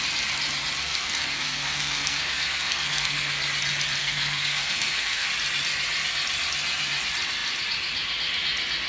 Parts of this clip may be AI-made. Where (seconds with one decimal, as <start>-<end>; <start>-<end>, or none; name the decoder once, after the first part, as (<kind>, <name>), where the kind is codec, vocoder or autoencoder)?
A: 0.8-3.3 (codec, SNAC); 4.0-5.3

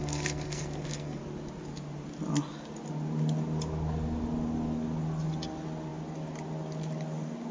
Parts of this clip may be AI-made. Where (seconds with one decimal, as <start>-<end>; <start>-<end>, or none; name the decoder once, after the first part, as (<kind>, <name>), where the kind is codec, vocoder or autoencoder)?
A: 0.0-1.2 (codec, SNAC)

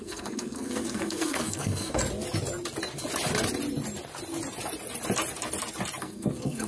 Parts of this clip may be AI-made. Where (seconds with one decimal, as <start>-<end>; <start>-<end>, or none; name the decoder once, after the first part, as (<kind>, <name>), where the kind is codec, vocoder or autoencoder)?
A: 0.0-2.0 (codec, SNAC); 6.0-6.7

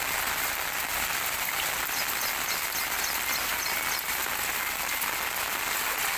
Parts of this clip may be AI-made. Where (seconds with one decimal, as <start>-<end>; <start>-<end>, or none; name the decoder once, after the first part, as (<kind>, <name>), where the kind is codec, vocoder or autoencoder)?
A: none

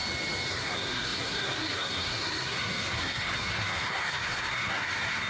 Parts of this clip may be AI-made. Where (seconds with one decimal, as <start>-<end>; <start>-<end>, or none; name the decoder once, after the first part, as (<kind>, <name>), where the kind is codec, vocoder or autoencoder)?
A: 0.5-5.3 (codec, SNAC)